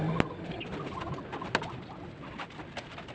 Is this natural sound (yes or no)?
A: yes